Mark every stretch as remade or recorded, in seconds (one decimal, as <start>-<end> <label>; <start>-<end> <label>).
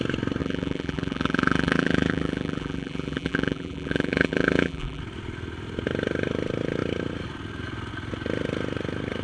0.0-0.4 recorded; 0.4-5.0 remade; 5.0-9.2 recorded